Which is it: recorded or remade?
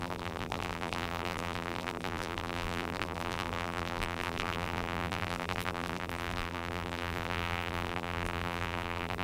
remade